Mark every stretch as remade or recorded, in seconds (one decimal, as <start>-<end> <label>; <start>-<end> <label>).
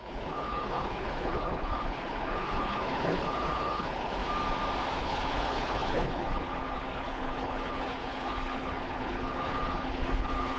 0.0-4.2 remade; 4.2-5.0 recorded; 5.0-10.6 remade